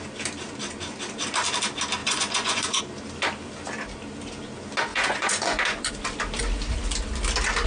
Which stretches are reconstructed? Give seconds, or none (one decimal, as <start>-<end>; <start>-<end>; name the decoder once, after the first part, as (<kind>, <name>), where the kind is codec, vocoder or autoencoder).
2.0-2.8 (vocoder, Vocos); 4.9-5.9